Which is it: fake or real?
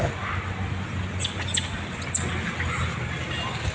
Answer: real